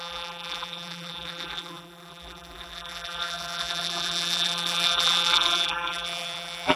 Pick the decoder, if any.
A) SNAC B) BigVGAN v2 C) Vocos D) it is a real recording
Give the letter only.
B